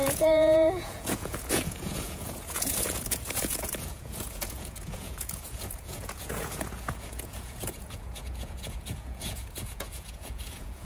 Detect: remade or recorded remade